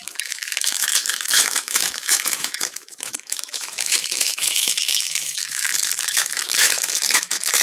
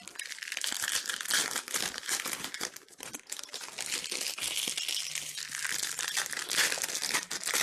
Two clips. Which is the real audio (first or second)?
second